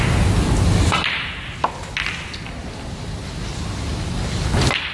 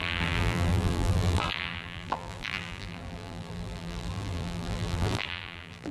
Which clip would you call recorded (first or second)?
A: first